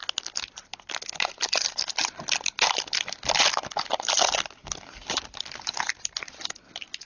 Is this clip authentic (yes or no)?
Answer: yes